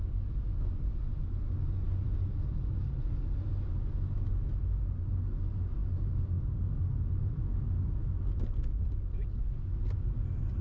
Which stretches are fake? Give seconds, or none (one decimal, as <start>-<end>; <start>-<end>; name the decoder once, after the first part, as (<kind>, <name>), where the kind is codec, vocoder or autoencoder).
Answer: 6.9-7.4 (vocoder, BigVGAN v2)

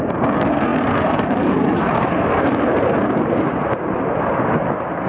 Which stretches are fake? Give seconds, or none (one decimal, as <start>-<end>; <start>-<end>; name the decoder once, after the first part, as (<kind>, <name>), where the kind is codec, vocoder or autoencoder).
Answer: 0.7-3.8 (vocoder, BigVGAN v2)

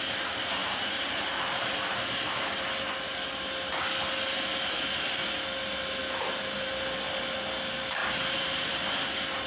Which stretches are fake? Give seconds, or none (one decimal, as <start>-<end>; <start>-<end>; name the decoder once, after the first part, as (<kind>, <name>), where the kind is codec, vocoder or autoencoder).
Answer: 0.6-2.5 (vocoder, BigVGAN v2); 8.0-8.7

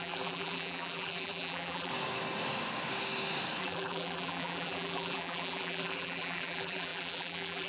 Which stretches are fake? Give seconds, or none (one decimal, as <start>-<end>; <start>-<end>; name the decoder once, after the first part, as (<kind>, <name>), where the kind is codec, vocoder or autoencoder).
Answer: 0.0-1.9 (vocoder, BigVGAN v2); 3.6-7.7

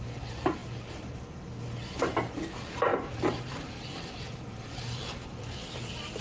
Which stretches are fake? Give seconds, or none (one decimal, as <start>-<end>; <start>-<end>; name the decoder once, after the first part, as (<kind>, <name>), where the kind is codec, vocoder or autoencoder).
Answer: 2.9-6.2 (vocoder, BigVGAN v2)

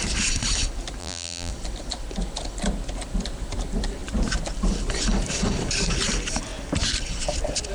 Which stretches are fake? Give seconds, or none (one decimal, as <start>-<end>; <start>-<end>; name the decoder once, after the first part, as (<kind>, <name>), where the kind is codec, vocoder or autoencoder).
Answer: 1.0-1.5 (vocoder, BigVGAN v2)

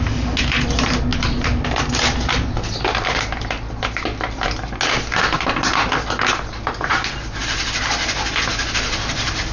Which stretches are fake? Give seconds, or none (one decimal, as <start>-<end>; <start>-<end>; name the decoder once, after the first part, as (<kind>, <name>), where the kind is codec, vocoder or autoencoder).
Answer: 1.1-1.8 (vocoder, BigVGAN v2)